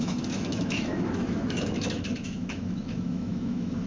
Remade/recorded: remade